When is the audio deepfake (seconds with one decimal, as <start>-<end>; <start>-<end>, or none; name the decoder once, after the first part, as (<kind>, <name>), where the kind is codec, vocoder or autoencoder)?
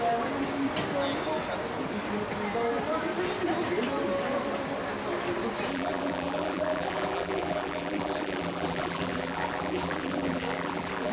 5.7-11.1 (vocoder, BigVGAN v2)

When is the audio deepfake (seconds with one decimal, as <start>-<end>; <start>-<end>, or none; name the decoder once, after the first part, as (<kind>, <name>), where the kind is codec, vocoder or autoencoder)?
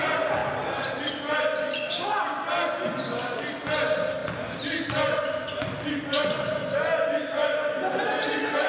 none